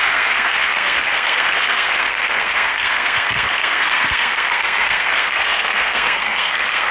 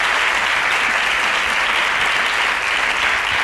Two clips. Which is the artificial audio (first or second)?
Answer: first